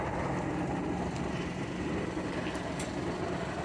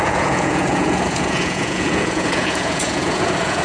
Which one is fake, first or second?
second